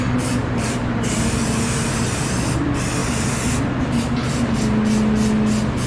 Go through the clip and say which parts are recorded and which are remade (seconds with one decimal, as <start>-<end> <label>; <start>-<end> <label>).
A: 0.0-0.4 recorded; 0.4-2.6 remade; 2.6-5.9 recorded